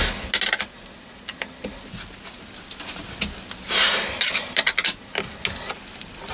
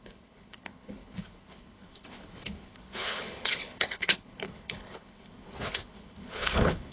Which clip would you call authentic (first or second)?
first